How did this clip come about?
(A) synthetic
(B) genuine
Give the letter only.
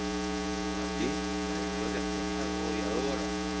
A